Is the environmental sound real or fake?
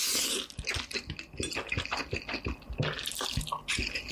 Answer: real